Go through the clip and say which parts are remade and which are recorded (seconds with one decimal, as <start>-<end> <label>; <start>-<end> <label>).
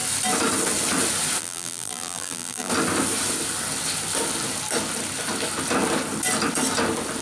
0.0-1.4 recorded; 1.4-2.7 remade; 2.7-7.2 recorded